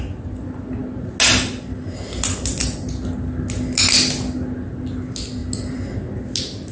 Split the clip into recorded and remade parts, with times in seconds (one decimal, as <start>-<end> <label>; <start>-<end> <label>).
0.0-6.7 recorded